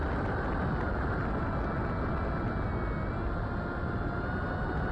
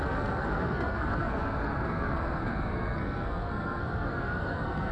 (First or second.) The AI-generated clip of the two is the second